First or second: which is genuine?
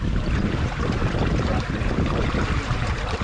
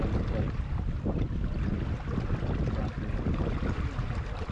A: second